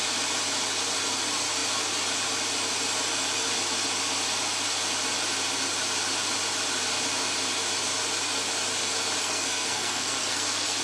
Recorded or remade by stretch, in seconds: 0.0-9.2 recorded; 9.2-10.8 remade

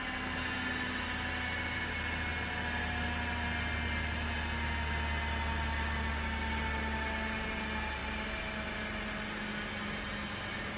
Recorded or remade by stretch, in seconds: 0.0-10.8 recorded

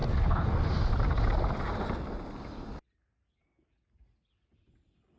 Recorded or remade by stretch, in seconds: 0.0-5.2 recorded